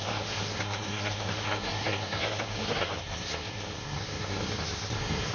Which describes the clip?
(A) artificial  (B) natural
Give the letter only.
A